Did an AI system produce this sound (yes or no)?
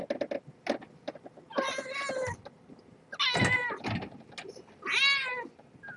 no